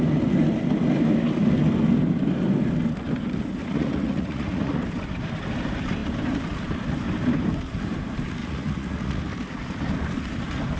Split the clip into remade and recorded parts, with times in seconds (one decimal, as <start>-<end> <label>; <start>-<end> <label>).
0.0-3.6 recorded; 3.6-4.8 remade; 4.8-8.4 recorded; 8.4-9.2 remade; 9.2-10.8 recorded